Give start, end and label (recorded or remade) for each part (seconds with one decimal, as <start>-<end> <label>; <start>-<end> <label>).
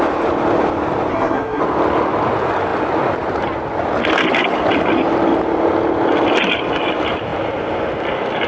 0.0-1.1 recorded; 1.1-1.6 remade; 1.6-8.5 recorded